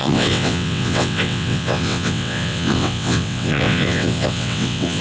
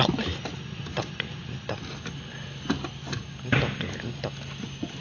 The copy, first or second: first